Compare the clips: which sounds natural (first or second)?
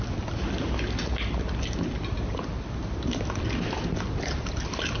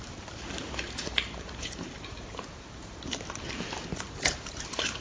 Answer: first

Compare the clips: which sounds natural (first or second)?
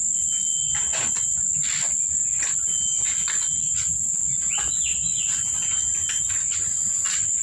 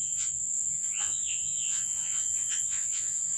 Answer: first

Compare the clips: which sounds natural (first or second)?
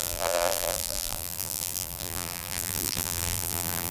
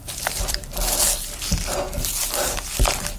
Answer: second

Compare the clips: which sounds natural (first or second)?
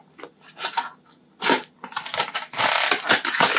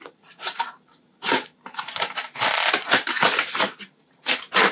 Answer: first